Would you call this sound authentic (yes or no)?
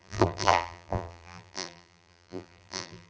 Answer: no